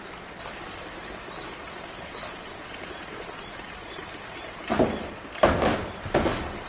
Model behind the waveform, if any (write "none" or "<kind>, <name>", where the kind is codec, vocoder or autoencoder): none